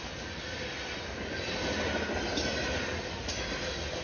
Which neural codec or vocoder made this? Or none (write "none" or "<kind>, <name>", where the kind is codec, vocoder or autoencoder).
none